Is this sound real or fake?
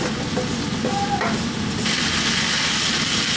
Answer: real